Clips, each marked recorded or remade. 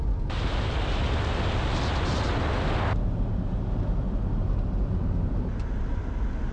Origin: recorded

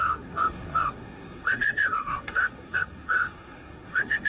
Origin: remade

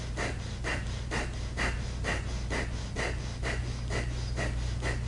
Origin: recorded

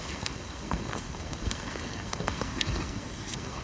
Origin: remade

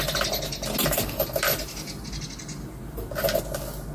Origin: recorded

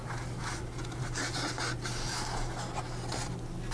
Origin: recorded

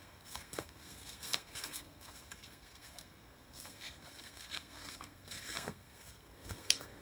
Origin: remade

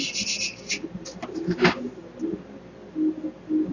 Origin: recorded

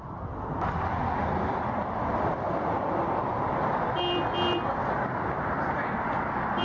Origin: recorded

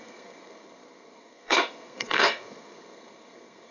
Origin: remade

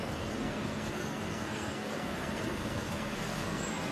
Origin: remade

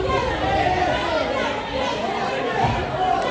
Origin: recorded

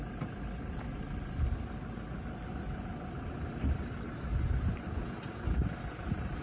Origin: recorded